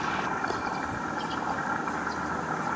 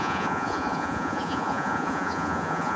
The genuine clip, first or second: first